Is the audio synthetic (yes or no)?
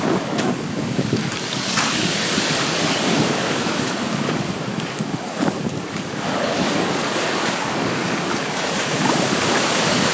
yes